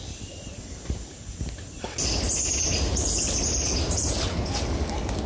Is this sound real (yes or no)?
yes